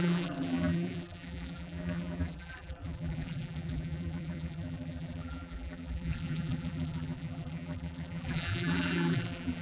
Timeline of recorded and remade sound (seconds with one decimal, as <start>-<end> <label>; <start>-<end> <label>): 0.0-9.6 remade